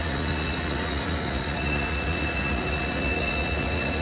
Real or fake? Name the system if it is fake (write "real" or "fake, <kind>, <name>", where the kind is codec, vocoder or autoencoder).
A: fake, vocoder, Vocos